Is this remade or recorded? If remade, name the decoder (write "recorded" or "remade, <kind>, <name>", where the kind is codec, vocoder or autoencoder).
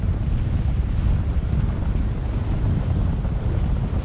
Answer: recorded